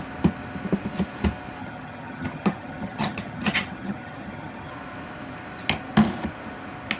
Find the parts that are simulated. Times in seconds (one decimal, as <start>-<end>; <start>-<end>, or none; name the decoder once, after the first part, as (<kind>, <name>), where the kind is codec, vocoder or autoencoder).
1.6-4.7 (vocoder, HiFi-GAN)